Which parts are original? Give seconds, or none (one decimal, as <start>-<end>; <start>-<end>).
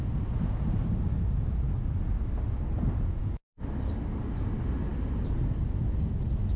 0.0-6.6